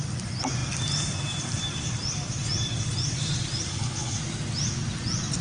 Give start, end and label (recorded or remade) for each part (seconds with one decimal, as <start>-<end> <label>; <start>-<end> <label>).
0.0-3.7 recorded; 3.7-4.2 remade; 4.2-5.4 recorded